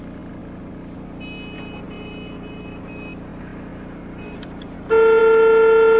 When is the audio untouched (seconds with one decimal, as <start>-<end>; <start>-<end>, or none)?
0.0-6.0